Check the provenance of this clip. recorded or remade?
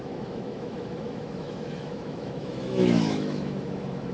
remade